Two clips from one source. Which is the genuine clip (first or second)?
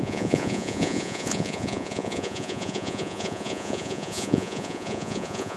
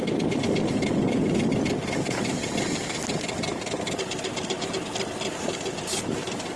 second